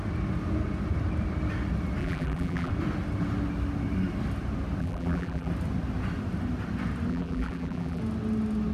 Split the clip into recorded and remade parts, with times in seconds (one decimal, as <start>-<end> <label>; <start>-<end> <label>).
0.0-2.0 recorded; 2.0-2.7 remade; 2.7-4.8 recorded; 4.8-5.5 remade; 5.5-7.1 recorded; 7.1-8.0 remade; 8.0-8.7 recorded